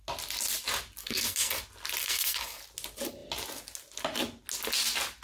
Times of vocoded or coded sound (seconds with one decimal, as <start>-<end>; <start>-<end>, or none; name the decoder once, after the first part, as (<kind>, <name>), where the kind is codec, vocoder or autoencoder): 1.0-1.6 (codec, SNAC); 2.0-2.6